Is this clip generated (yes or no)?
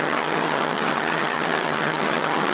yes